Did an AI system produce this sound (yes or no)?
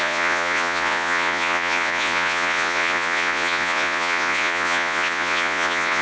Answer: yes